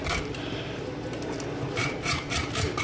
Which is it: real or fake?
real